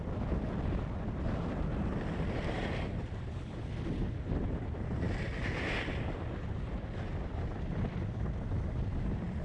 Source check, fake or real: real